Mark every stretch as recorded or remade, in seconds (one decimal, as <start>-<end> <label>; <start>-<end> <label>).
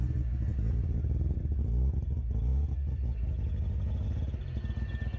0.0-0.5 recorded; 0.5-2.1 remade; 2.1-2.5 recorded; 2.5-3.0 remade; 3.0-5.2 recorded